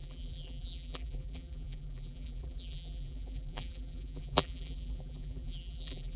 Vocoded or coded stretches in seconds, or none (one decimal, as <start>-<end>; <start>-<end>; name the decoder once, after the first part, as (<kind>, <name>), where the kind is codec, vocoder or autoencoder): 0.0-6.2 (vocoder, BigVGAN v2)